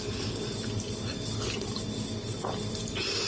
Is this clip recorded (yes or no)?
yes